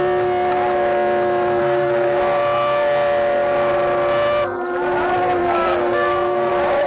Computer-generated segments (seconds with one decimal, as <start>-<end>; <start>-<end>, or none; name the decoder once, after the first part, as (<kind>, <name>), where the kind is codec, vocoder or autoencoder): 1.6-2.2 (codec, SNAC); 5.4-6.5